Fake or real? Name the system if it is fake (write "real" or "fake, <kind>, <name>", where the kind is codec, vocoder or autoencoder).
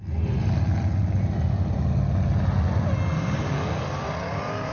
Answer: real